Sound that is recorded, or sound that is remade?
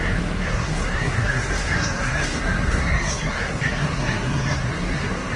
remade